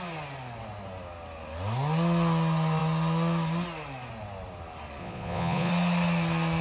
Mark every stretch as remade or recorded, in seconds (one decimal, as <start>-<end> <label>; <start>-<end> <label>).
0.0-5.0 recorded; 5.0-5.7 remade; 5.7-6.6 recorded